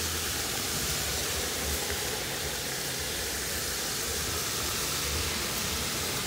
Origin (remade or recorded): recorded